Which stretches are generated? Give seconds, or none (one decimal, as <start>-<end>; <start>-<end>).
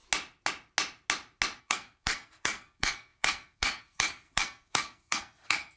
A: 1.6-5.8